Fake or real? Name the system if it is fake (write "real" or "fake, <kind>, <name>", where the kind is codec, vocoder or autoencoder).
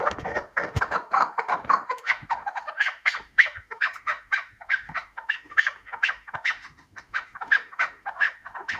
fake, autoencoder, DAC-VAE